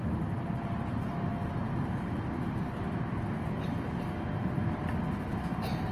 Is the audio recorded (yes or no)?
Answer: yes